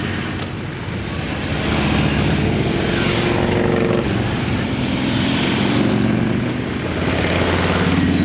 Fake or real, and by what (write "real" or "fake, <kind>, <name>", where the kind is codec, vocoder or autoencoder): real